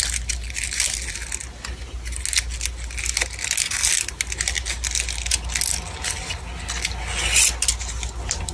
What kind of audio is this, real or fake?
real